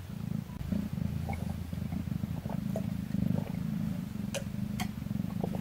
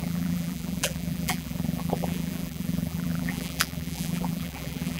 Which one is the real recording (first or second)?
first